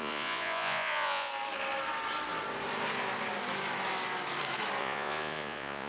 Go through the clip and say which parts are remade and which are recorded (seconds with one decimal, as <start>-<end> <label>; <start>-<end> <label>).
0.0-1.3 remade; 1.3-4.8 recorded; 4.8-5.9 remade